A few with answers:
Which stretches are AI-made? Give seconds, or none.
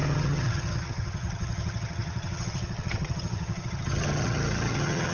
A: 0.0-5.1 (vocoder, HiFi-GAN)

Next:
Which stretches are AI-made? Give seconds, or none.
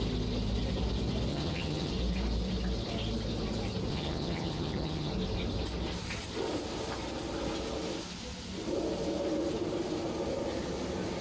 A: 1.3-1.9 (vocoder, HiFi-GAN); 3.9-5.1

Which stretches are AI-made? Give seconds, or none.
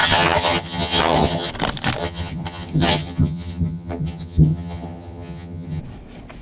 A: 0.0-1.5 (vocoder, HiFi-GAN); 2.0-5.8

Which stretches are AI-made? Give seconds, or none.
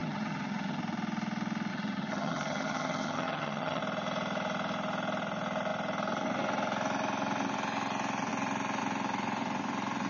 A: 0.0-0.8 (vocoder, HiFi-GAN); 1.7-3.8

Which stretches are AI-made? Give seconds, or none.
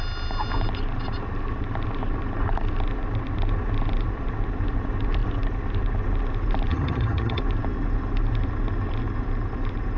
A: 6.7-7.4 (vocoder, HiFi-GAN)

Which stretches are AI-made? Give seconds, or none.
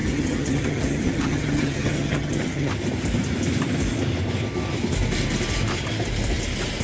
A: 0.0-2.7 (vocoder, HiFi-GAN)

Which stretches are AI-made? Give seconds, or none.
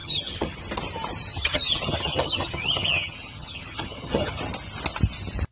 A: 0.0-0.6 (vocoder, HiFi-GAN); 1.3-4.4